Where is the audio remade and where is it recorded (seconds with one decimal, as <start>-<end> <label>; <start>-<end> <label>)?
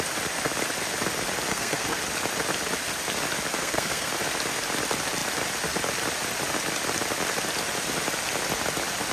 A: 0.0-1.5 recorded; 1.5-2.0 remade; 2.0-3.6 recorded; 3.6-4.1 remade; 4.1-9.1 recorded